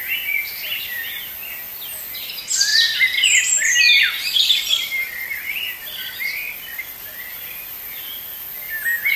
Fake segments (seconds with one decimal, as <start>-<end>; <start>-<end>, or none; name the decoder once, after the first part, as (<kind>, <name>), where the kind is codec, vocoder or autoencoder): none